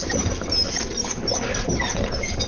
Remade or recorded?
recorded